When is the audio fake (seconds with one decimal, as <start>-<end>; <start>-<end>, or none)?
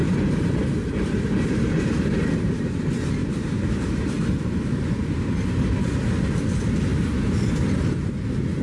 0.0-2.5; 3.2-4.8